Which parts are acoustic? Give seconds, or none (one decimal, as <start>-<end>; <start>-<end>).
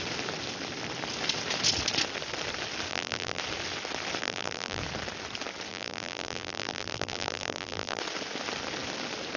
0.0-2.9; 3.4-4.2; 4.8-5.7; 8.0-9.4